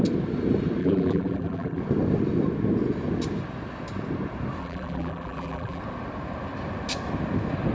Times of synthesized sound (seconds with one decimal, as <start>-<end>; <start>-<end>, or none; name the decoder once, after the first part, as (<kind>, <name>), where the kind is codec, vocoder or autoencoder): 0.8-1.8 (vocoder, BigVGAN v2); 4.6-5.8